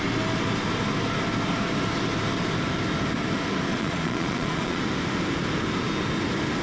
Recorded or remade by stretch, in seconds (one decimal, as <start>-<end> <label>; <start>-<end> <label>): 0.0-3.7 recorded; 3.7-4.8 remade; 4.8-6.6 recorded